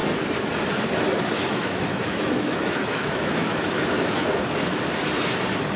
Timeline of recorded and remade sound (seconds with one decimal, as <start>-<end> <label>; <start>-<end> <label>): 0.0-1.4 recorded; 1.4-4.4 remade; 4.4-5.8 recorded